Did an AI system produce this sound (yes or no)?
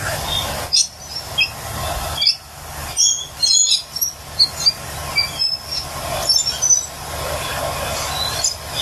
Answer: no